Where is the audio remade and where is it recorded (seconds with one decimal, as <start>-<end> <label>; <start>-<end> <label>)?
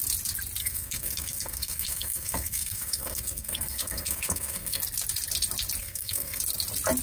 0.0-0.6 recorded; 0.6-4.8 remade; 4.8-5.8 recorded; 5.8-6.4 remade; 6.4-7.0 recorded